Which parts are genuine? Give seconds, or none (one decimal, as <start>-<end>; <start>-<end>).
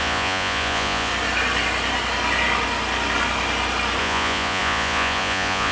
1.1-4.0